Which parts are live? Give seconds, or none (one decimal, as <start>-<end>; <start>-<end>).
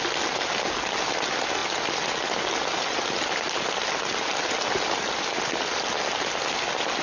0.0-7.0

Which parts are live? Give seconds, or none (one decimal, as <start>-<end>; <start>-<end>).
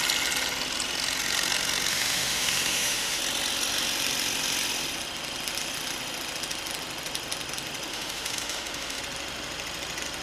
0.0-1.9; 3.2-7.9; 9.0-10.2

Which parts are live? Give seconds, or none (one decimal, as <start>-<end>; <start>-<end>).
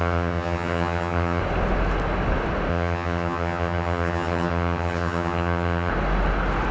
1.4-2.7; 5.9-6.7